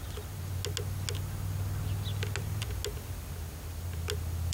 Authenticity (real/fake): real